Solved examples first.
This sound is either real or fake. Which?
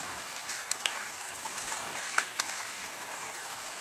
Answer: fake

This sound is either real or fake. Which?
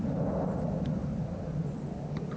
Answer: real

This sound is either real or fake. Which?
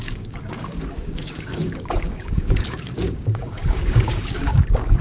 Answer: fake